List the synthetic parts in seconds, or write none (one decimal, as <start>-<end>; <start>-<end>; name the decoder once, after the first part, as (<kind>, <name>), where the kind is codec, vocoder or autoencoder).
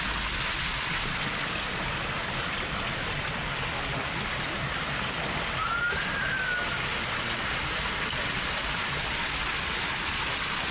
none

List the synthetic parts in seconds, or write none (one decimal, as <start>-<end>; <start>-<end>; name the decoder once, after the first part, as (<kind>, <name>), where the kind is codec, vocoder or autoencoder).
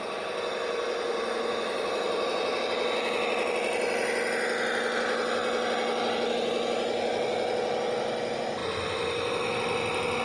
1.1-2.6 (vocoder, BigVGAN v2)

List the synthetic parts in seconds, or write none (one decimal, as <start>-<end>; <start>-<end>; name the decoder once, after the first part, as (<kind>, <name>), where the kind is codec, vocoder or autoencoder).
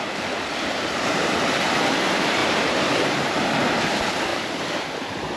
0.7-1.8 (vocoder, BigVGAN v2); 2.4-3.5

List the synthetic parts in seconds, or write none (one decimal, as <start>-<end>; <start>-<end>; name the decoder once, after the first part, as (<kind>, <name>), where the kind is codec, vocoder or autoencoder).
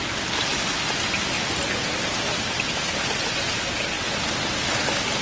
none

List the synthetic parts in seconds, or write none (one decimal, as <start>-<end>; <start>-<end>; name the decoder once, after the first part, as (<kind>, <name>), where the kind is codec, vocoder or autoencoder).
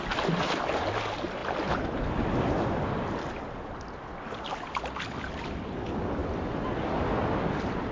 none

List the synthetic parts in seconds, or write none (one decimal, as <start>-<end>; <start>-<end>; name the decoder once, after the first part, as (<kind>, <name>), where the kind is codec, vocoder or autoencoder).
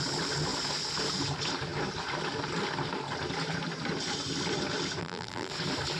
5.0-5.5 (vocoder, BigVGAN v2)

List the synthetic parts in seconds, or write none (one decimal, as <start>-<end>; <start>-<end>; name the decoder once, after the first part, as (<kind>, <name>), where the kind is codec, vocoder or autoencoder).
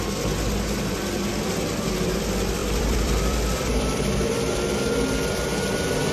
2.6-4.4 (vocoder, BigVGAN v2)